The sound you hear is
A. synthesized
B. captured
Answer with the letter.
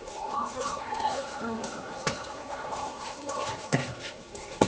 A